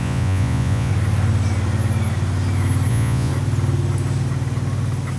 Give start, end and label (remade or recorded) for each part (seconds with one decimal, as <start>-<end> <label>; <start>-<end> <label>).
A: 0.0-0.9 remade; 0.9-2.9 recorded; 2.9-3.3 remade; 3.3-5.2 recorded

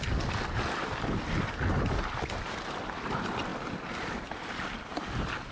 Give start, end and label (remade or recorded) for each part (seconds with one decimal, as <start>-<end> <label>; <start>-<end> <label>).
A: 0.0-5.5 recorded